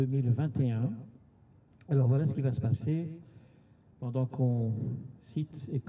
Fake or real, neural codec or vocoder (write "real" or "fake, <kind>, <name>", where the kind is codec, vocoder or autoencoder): fake, codec, DAC